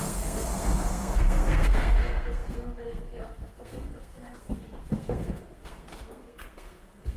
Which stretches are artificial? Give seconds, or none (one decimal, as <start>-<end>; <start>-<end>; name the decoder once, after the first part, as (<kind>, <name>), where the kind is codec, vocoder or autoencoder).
0.0-7.2 (codec, SNAC)

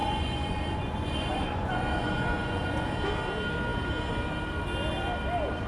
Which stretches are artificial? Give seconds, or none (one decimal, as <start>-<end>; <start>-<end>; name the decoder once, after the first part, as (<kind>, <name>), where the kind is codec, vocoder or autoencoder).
0.0-2.9 (vocoder, Vocos)

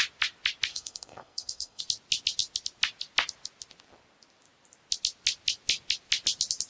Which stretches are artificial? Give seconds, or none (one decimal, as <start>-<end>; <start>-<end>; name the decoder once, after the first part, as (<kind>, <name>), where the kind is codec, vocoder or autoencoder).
0.7-1.8 (codec, SNAC)

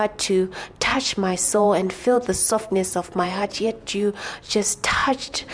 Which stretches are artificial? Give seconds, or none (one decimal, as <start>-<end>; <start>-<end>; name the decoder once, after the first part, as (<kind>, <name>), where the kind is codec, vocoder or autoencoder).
0.9-4.2 (vocoder, Vocos); 5.0-5.5